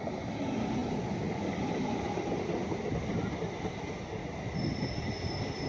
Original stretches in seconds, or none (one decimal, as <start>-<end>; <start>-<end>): 0.0-5.7